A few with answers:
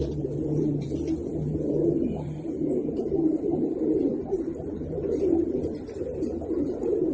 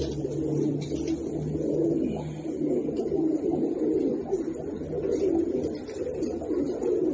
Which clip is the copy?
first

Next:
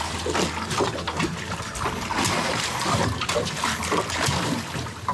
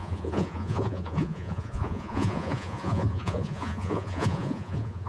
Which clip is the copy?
second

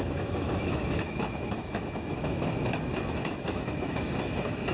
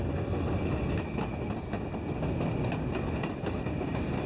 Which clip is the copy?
first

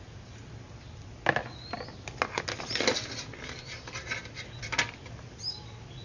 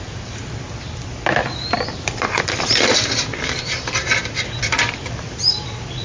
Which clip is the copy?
second